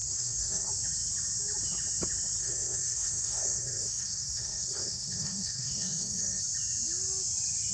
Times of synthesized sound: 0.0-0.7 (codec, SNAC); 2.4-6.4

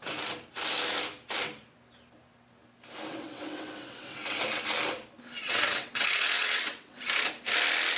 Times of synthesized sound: 3.1-4.4 (vocoder, WaveNeXt); 5.4-7.0

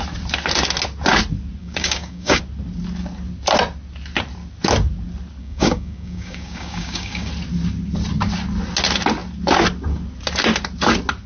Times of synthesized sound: 1.6-2.4 (codec, DAC); 5.4-7.3

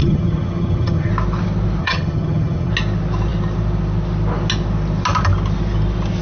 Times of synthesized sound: 0.0-1.1 (vocoder, HiFi-GAN); 1.8-2.7

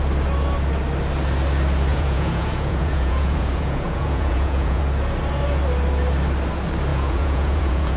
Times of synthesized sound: 1.9-4.8 (vocoder, Vocos); 6.9-8.0

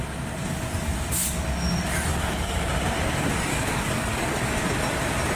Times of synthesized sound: 2.1-2.7 (codec, DAC); 3.5-4.5